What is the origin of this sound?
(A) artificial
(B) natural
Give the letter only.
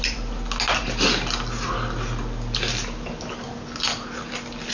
B